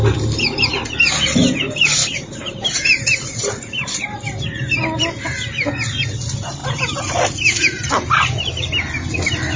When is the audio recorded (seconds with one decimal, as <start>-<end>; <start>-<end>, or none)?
0.0-2.0; 4.4-6.6; 7.9-9.6